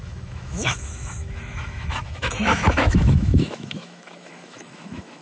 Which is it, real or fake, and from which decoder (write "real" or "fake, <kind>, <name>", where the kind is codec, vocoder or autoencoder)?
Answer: fake, autoencoder, DAC-VAE